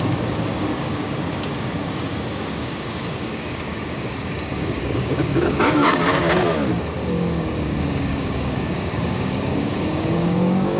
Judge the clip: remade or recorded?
remade